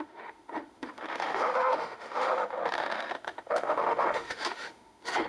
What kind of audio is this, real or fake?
fake